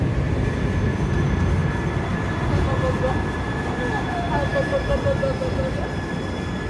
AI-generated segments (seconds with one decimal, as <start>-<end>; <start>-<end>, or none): none